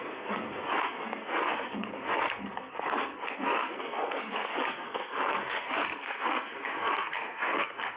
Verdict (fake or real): fake